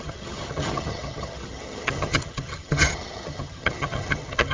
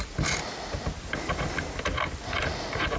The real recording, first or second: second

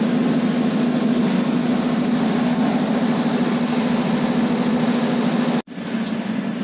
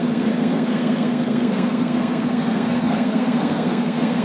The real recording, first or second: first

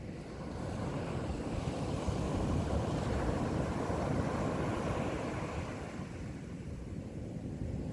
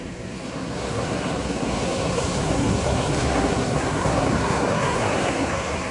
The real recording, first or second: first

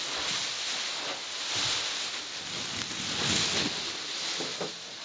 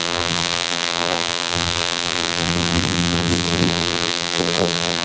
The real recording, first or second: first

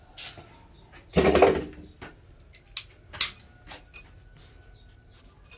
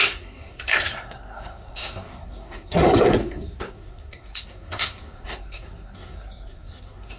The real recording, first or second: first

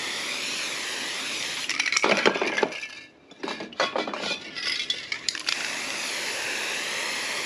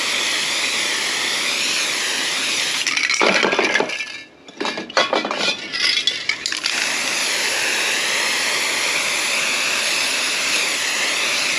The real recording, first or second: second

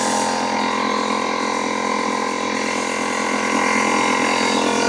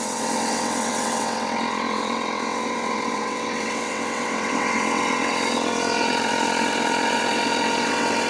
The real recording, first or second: first